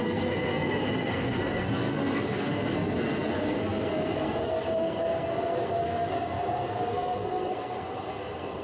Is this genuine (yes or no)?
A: no